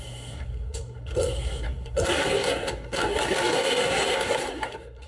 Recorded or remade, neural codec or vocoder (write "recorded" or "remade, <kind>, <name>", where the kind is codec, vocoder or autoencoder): remade, codec, SNAC